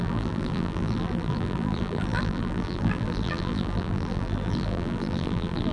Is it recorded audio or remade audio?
remade